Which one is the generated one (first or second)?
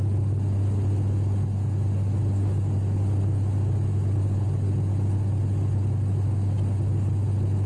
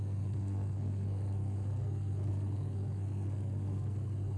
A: second